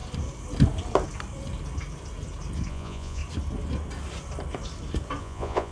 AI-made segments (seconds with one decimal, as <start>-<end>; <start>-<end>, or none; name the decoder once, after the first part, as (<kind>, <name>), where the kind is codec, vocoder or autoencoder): 2.7-3.2 (vocoder, Vocos); 5.2-5.7